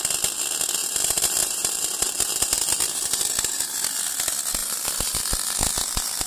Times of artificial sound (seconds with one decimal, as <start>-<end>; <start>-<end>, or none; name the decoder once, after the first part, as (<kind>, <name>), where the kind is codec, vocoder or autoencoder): 0.8-3.3 (vocoder, BigVGAN v2); 4.6-5.2